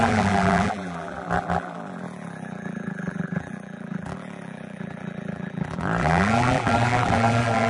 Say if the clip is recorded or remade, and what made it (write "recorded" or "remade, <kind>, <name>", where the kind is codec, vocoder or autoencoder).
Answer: remade, vocoder, BigVGAN v2